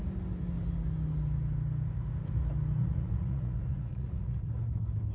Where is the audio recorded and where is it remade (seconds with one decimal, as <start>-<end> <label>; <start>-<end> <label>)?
0.0-2.8 recorded; 2.8-4.5 remade; 4.5-5.1 recorded